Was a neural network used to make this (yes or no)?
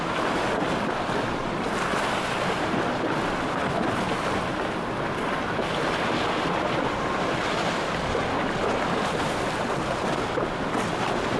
no